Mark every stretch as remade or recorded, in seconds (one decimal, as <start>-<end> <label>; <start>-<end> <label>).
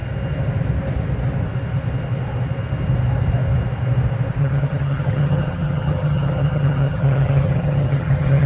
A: 0.0-4.4 recorded; 4.4-8.5 remade